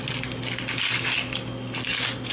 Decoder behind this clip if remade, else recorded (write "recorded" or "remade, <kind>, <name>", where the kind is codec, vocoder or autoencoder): recorded